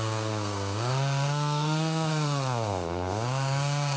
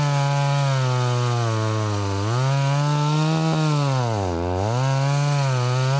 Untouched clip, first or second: second